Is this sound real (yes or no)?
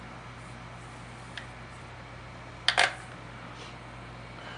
yes